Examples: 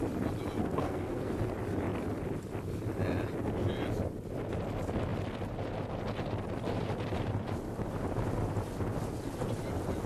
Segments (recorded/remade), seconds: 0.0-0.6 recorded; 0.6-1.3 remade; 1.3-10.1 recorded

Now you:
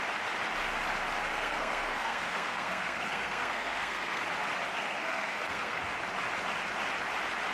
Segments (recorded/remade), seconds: 0.0-1.3 recorded; 1.3-4.2 remade; 4.2-4.7 recorded; 4.7-5.8 remade; 5.8-7.5 recorded

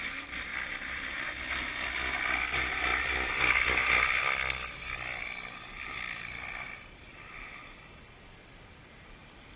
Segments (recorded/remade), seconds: 0.0-9.6 recorded

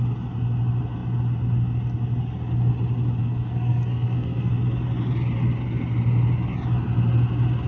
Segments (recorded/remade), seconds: 0.0-3.2 recorded; 3.2-4.5 remade; 4.5-7.7 recorded